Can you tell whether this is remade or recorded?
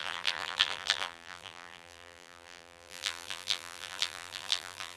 remade